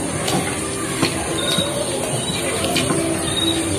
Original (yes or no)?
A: yes